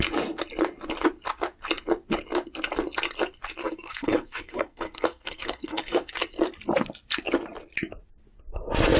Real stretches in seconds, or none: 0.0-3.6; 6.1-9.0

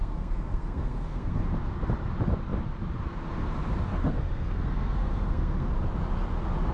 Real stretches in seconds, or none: 1.4-3.9; 5.7-6.7

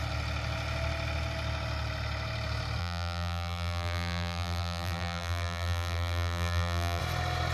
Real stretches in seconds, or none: 0.0-2.8; 7.0-7.5

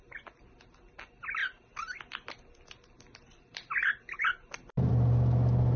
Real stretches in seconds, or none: 0.0-5.8

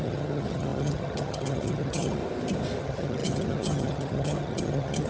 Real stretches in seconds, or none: 2.2-2.8

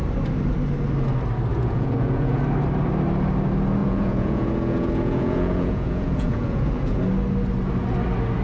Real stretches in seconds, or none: 0.0-1.5; 2.4-3.8; 7.0-8.4

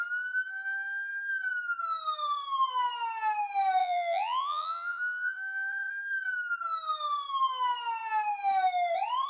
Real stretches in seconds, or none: 0.0-3.8; 5.9-9.3

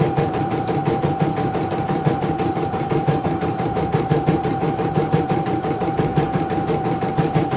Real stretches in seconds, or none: 0.8-2.1; 6.1-7.1